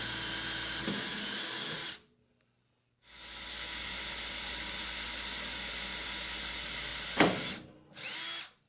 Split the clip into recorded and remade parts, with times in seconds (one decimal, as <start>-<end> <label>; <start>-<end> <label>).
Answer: 0.0-8.7 recorded